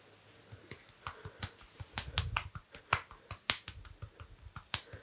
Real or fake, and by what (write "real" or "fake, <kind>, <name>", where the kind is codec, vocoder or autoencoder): real